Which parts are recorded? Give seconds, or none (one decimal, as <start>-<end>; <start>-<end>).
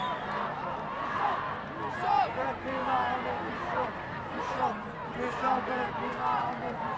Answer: 0.0-7.0